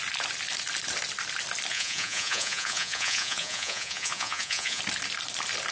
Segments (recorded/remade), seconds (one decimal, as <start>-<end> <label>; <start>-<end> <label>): 0.0-1.7 recorded; 1.7-4.8 remade; 4.8-5.7 recorded